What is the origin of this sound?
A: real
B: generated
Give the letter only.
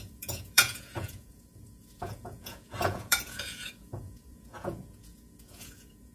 B